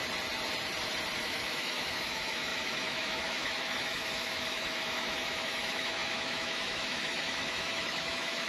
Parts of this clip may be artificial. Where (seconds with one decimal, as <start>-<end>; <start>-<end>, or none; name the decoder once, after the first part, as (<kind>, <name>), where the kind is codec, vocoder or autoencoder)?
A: 1.2-8.5 (autoencoder, DAC-VAE)